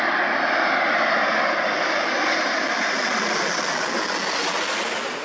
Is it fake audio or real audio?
real